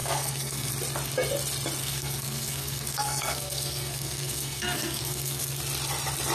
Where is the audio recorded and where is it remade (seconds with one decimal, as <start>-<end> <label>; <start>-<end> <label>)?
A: 0.0-0.7 remade; 0.7-1.8 recorded; 1.8-5.6 remade; 5.6-6.3 recorded